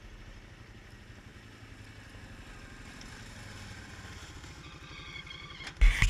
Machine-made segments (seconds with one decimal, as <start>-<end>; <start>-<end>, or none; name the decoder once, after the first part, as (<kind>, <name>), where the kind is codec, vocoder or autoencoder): none